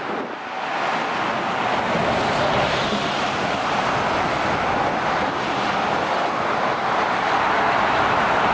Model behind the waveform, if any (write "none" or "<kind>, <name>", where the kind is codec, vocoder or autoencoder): none